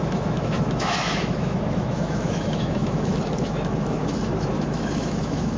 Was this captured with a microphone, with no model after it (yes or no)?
no